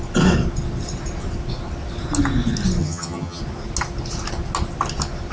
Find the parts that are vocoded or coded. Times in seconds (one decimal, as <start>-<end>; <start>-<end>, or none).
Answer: 2.8-3.4